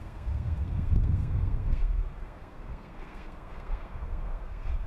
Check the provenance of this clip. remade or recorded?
remade